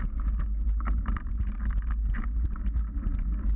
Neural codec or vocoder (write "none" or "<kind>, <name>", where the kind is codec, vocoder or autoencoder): none